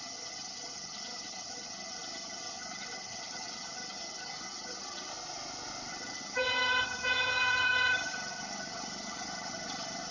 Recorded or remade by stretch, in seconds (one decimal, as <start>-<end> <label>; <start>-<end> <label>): 0.0-5.1 remade; 5.1-5.9 recorded; 5.9-10.1 remade